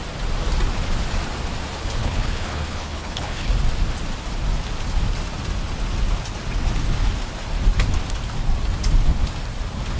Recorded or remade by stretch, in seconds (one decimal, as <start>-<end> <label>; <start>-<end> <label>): 0.0-2.0 recorded; 2.0-3.5 remade; 3.5-10.0 recorded